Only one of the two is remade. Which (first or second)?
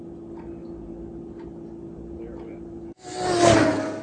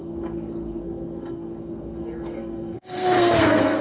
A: second